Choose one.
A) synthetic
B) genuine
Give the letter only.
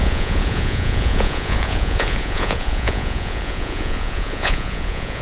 A